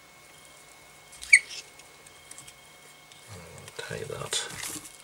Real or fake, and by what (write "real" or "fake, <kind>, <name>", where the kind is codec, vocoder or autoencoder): real